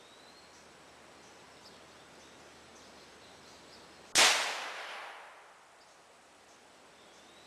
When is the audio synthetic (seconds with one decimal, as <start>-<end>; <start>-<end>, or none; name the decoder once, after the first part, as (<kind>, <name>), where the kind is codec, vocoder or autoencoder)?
none